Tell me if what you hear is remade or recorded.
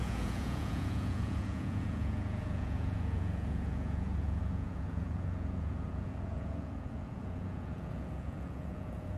remade